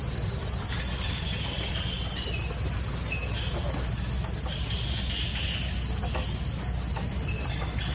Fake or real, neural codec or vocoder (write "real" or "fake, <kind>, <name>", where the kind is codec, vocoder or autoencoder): real